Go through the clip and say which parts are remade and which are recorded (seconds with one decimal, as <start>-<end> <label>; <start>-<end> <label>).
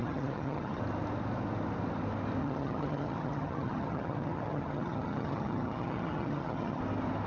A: 0.0-0.8 remade; 0.8-2.4 recorded; 2.4-6.8 remade; 6.8-7.3 recorded